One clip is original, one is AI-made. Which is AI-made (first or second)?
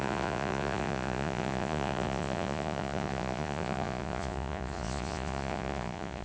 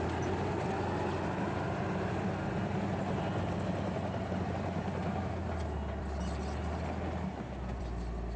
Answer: first